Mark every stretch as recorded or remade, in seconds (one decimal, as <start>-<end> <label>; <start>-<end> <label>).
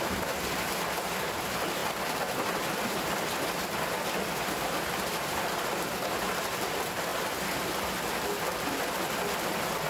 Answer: 0.0-7.1 remade; 7.1-8.4 recorded; 8.4-9.9 remade